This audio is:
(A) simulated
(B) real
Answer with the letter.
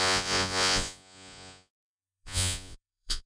A